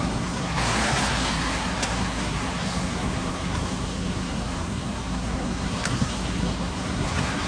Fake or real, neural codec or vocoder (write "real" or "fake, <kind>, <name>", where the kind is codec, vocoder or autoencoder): fake, codec, SNAC